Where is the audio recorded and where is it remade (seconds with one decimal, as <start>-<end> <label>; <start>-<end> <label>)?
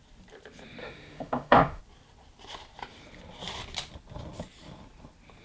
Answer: 0.0-0.8 recorded; 0.8-1.8 remade; 1.8-5.4 recorded